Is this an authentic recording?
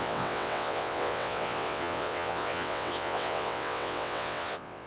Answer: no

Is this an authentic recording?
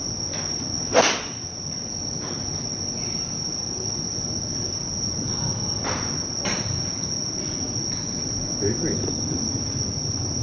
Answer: yes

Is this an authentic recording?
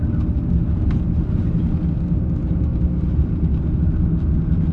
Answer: yes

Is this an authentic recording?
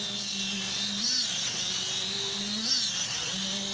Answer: yes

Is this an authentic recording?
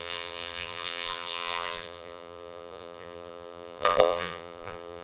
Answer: no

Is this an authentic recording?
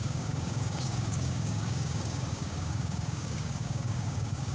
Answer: no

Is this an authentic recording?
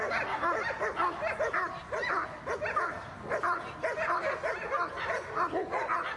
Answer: yes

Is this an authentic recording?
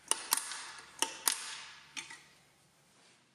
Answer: yes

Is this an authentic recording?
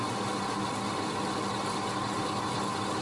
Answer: yes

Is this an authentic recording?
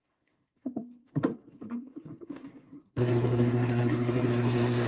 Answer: no